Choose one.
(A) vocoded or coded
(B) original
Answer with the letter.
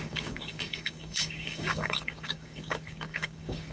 A